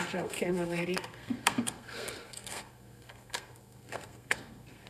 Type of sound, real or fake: fake